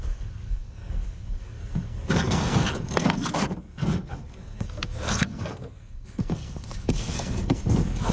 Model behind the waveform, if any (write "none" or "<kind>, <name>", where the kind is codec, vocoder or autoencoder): codec, SNAC